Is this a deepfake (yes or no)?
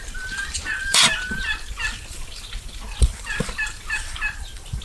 yes